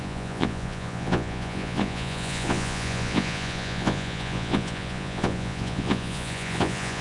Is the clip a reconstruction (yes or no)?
yes